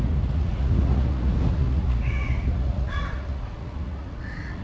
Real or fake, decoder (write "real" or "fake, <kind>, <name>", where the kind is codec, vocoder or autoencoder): fake, vocoder, Vocos